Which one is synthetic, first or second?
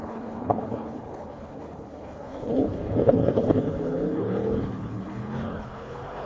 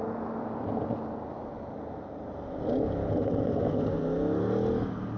first